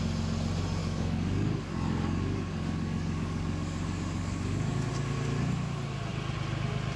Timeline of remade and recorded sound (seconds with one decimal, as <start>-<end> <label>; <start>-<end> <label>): 0.0-0.8 recorded; 0.8-4.9 remade; 4.9-7.0 recorded